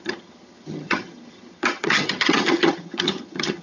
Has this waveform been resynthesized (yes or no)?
yes